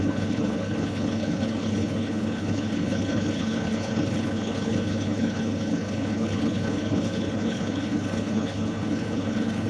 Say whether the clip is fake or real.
fake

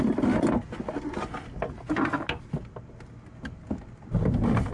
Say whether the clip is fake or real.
real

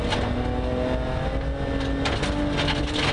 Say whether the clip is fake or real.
real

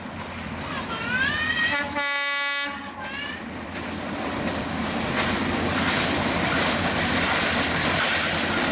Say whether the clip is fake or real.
real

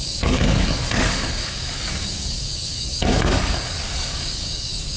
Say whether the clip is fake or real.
fake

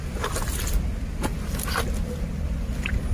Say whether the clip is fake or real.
real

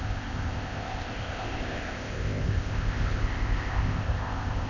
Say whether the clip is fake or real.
fake